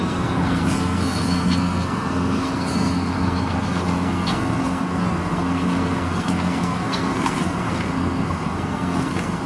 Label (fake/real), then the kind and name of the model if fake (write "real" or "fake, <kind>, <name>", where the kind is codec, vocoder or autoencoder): fake, codec, SNAC